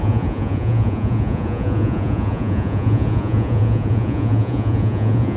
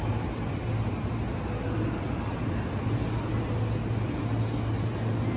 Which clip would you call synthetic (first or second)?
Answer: first